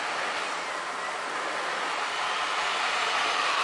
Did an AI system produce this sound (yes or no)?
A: no